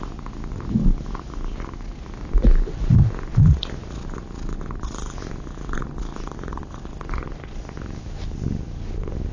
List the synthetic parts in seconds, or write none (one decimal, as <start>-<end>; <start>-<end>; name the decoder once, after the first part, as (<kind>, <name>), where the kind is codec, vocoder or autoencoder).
none